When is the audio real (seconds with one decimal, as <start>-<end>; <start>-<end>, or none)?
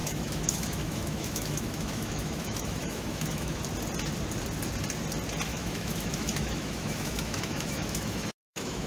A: 3.6-5.5